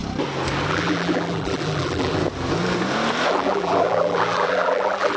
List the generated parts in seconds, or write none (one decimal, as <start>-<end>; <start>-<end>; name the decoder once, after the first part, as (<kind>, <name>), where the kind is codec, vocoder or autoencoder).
0.7-2.2 (vocoder, BigVGAN v2); 3.3-5.2